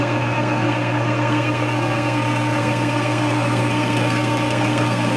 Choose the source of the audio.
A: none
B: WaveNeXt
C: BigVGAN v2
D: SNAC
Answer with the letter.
D